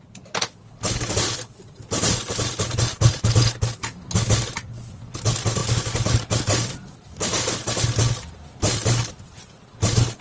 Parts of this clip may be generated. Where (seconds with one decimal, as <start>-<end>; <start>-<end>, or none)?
none